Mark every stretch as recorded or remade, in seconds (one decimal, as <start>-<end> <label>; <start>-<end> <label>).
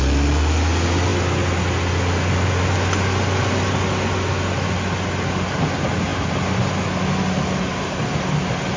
0.0-8.8 recorded